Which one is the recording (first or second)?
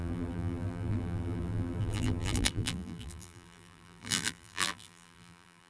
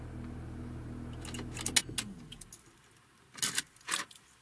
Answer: second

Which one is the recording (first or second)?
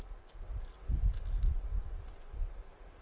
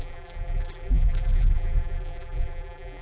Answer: first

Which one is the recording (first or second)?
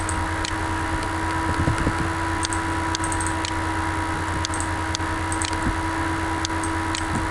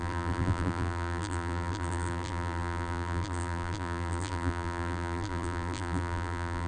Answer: first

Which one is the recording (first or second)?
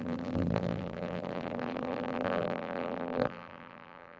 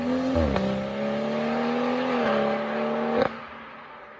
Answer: second